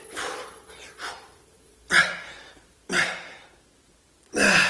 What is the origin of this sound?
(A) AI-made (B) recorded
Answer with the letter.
B